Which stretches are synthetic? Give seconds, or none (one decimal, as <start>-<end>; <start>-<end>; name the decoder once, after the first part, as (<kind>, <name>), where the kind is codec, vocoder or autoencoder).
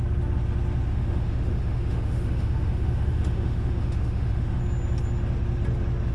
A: 0.9-4.6 (autoencoder, DAC-VAE)